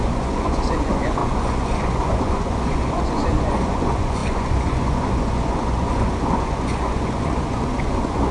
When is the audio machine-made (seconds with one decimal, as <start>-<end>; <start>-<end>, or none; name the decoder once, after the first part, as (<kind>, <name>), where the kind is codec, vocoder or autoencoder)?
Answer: 0.0-8.3 (vocoder, Vocos)